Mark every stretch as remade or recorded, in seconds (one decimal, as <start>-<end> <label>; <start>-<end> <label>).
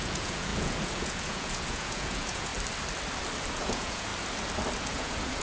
0.0-2.5 remade; 2.5-3.5 recorded; 3.5-4.1 remade; 4.1-4.8 recorded; 4.8-5.4 remade